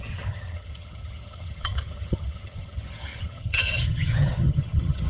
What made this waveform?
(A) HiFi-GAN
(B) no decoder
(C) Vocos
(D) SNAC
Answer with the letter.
A